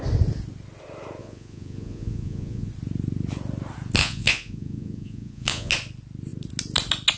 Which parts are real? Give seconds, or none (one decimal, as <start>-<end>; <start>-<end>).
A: 0.0-1.2; 2.7-4.0; 5.7-7.2

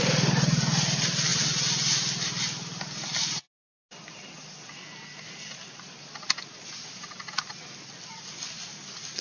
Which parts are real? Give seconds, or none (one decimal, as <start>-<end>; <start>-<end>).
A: 0.0-9.2

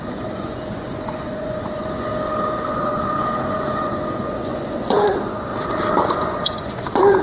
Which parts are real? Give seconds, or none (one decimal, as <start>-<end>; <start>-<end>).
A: 2.1-2.7; 5.5-6.0

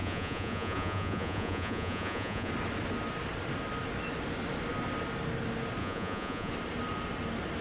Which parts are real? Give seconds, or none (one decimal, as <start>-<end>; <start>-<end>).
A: 2.5-5.8; 6.5-7.6

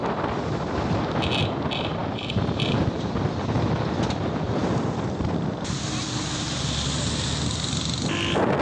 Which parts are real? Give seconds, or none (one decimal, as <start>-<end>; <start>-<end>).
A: 0.0-8.6

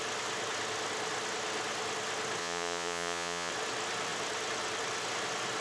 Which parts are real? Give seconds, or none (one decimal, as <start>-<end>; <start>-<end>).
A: 0.0-2.4; 3.5-5.6

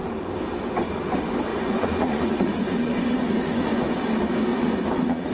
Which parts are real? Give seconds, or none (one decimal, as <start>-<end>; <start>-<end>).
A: 0.0-1.5; 3.8-4.5

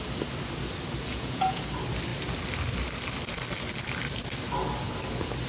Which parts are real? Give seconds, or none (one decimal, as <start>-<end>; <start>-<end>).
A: 0.0-1.1; 1.6-5.5